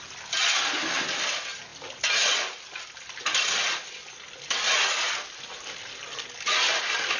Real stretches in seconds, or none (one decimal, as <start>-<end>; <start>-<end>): 0.0-7.2